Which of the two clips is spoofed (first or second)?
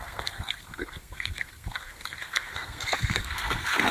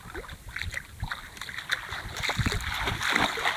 first